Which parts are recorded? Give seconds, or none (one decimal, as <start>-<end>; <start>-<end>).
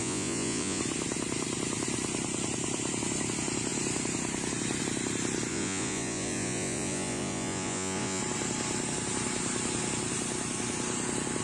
0.8-5.5; 8.2-11.4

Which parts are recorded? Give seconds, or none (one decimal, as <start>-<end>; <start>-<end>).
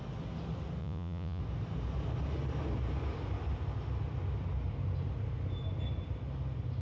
0.0-0.8; 1.4-6.8